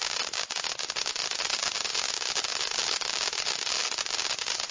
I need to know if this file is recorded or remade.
recorded